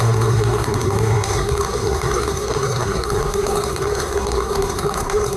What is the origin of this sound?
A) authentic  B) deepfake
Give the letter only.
B